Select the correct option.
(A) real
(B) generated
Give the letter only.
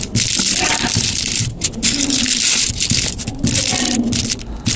A